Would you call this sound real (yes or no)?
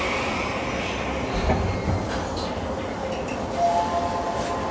yes